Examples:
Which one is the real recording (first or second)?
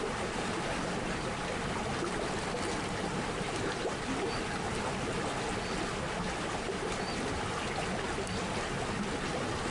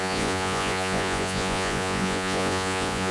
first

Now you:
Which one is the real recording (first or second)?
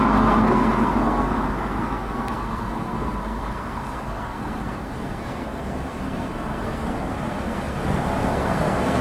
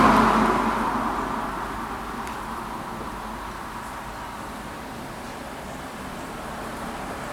second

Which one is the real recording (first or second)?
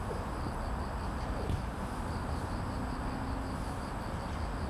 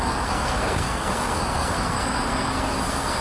first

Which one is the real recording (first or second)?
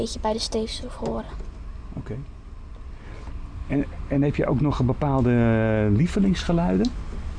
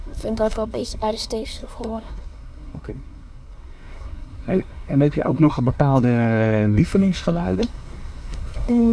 first